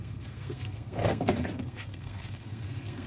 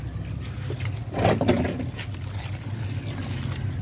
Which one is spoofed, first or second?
first